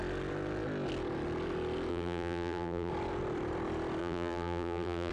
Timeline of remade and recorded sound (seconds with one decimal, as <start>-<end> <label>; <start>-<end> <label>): 0.0-1.9 recorded; 1.9-2.9 remade; 2.9-4.0 recorded; 4.0-5.1 remade